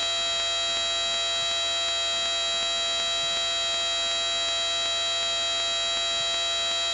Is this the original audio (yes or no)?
yes